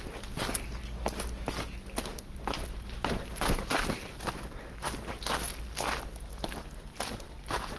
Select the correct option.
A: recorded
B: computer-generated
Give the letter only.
A